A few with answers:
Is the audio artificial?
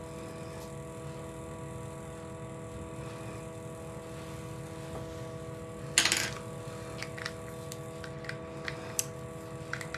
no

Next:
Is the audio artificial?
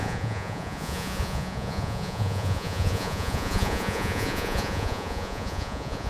yes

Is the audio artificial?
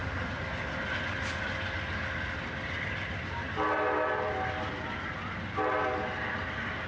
no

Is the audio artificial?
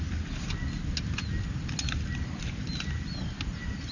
no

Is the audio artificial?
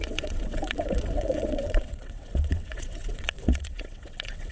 yes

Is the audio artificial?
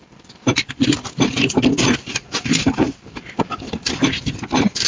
no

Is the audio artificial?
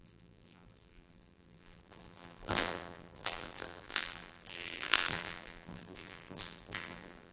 yes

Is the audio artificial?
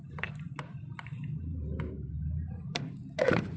yes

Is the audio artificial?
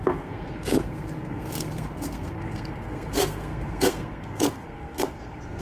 yes